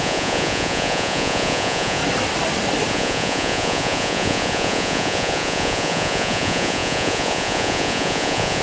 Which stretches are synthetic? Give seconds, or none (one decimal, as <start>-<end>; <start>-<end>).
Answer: 0.0-2.0; 2.9-8.6